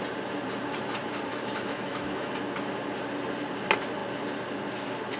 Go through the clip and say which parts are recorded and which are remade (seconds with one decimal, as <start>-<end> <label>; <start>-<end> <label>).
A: 0.0-1.3 recorded; 1.3-2.3 remade; 2.3-5.2 recorded